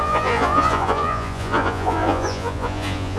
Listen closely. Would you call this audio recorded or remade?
remade